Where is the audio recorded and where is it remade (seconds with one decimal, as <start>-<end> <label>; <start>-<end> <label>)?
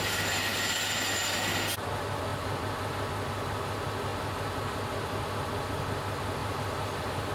0.0-6.4 recorded; 6.4-7.3 remade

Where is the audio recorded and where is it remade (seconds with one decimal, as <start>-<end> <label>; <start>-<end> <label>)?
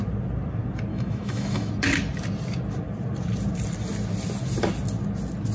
0.0-0.9 recorded; 0.9-1.7 remade; 1.7-5.5 recorded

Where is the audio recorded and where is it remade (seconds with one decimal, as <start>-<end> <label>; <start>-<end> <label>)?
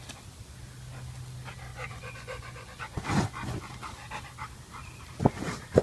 0.0-1.7 recorded; 1.7-3.7 remade; 3.7-5.8 recorded